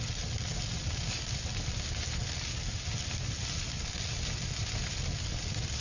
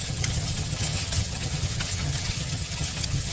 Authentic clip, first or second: first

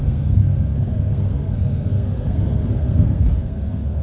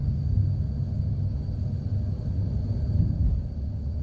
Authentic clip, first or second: second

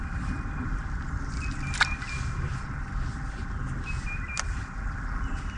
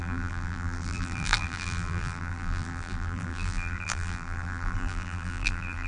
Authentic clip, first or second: first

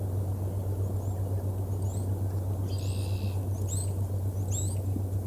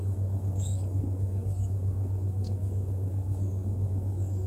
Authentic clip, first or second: first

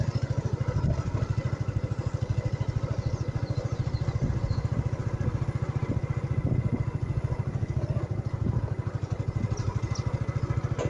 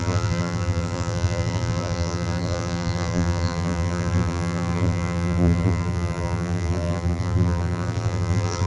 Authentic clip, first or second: first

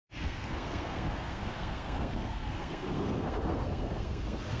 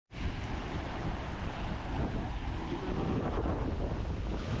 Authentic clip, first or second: second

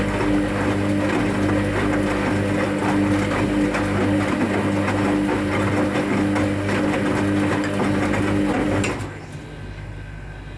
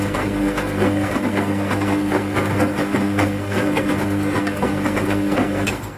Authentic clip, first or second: first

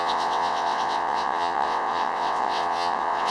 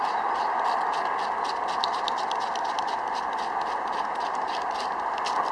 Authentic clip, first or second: second